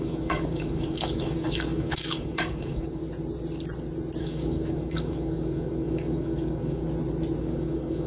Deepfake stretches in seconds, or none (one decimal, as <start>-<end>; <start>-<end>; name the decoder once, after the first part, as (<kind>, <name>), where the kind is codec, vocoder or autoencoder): 0.0-3.0 (codec, DAC); 4.2-6.8; 7.4-8.1

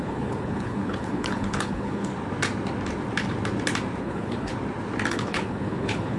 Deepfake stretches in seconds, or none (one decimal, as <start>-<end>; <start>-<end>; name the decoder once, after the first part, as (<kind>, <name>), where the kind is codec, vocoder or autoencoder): 0.0-2.1 (codec, HILCodec); 4.0-4.5; 5.1-6.2

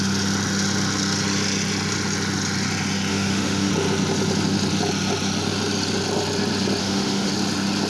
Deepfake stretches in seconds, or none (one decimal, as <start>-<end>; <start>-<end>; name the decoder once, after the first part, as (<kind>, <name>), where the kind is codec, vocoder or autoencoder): 3.1-3.7 (autoencoder, DAC-VAE); 6.8-7.3

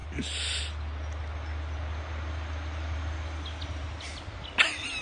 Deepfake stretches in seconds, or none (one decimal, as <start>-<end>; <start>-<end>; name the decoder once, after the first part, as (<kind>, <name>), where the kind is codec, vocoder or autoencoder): none